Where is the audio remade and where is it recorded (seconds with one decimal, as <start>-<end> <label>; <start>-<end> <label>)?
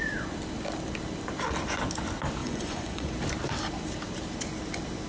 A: 0.0-2.4 recorded; 2.4-3.1 remade; 3.1-5.1 recorded